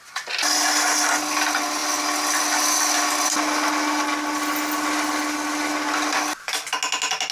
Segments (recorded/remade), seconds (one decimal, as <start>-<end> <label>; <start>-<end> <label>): 0.0-7.3 recorded